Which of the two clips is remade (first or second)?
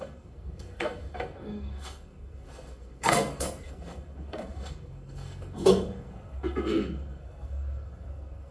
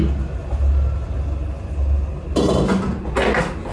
first